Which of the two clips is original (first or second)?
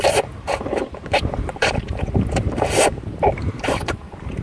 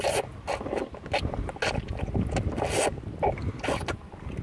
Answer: second